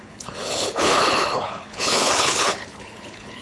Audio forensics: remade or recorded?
remade